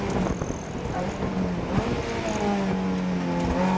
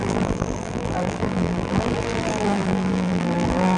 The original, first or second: first